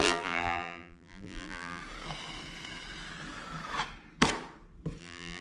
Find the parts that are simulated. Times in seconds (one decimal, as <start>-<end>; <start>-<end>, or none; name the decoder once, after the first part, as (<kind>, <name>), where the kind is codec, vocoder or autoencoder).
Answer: 0.0-1.8 (vocoder, BigVGAN v2); 5.0-5.4